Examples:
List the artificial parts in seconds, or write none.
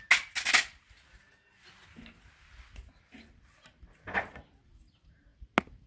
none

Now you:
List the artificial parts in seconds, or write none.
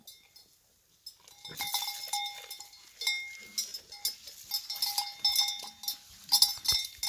none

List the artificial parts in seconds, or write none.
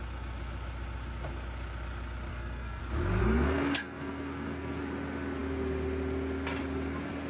2.3-2.8 (codec, SNAC); 3.2-4.8